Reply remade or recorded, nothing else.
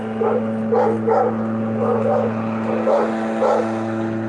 recorded